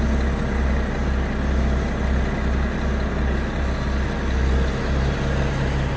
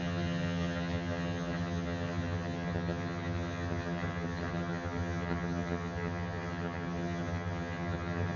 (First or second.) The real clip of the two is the first